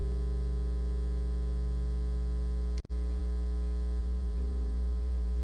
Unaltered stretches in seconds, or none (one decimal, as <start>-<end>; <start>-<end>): 0.0-4.0